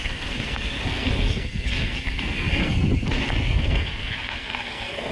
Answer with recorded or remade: remade